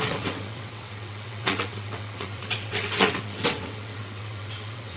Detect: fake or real fake